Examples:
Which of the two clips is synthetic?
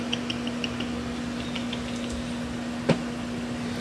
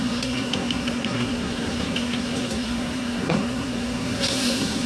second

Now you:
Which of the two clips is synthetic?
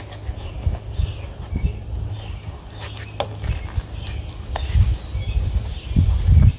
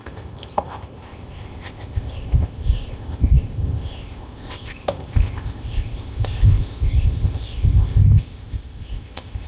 second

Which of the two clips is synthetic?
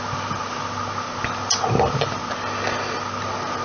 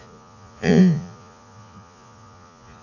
second